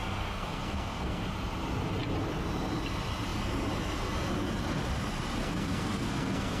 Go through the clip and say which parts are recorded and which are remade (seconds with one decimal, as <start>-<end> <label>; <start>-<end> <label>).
0.0-1.2 remade; 1.2-5.4 recorded; 5.4-6.6 remade